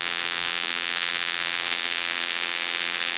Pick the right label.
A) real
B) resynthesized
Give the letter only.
B